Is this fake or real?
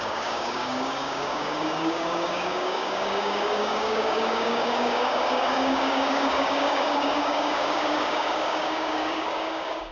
fake